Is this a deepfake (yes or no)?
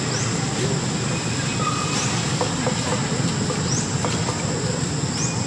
no